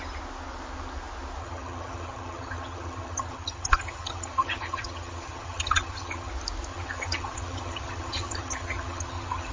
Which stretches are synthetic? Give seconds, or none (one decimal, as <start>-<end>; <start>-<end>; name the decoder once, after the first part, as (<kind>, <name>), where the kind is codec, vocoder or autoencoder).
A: 1.4-6.3 (vocoder, HiFi-GAN); 6.7-9.5